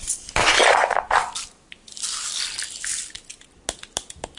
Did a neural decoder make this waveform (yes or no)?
no